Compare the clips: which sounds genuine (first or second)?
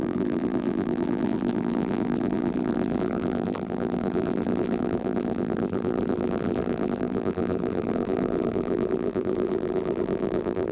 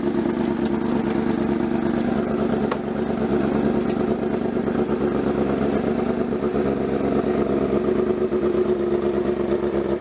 second